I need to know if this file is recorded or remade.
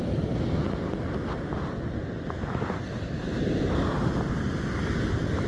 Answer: recorded